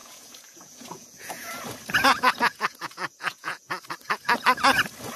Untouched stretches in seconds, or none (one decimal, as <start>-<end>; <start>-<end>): 1.5-2.1; 3.7-5.2